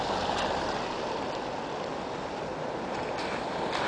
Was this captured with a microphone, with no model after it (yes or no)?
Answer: yes